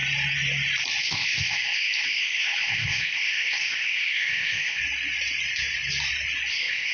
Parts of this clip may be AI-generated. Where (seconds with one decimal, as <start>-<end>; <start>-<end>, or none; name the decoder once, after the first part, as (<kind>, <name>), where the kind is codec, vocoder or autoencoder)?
1.0-4.8 (codec, ZipCodec); 6.5-6.9